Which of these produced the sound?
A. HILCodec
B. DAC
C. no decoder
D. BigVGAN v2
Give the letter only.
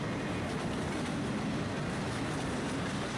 C